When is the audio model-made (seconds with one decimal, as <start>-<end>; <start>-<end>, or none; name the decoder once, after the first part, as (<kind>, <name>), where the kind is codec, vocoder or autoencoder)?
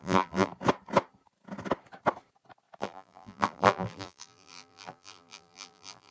0.0-0.5 (vocoder, BigVGAN v2); 2.8-6.1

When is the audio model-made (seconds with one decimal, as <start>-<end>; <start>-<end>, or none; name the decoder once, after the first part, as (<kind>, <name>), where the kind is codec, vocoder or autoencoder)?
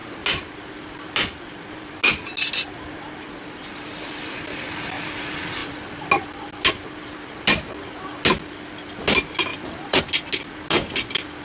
9.5-10.0 (vocoder, BigVGAN v2)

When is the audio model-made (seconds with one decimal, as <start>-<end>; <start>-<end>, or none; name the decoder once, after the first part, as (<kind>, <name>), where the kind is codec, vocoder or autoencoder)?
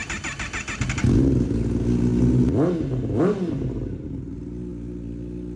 none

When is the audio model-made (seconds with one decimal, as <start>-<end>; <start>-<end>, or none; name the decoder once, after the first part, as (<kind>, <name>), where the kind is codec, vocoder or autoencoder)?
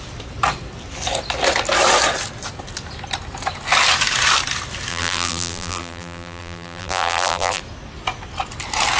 4.9-7.6 (vocoder, BigVGAN v2)